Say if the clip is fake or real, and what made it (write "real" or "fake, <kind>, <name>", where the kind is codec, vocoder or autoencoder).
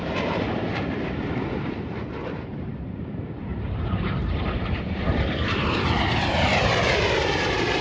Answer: fake, vocoder, BigVGAN v2